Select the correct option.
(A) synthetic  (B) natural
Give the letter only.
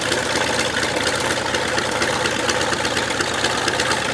B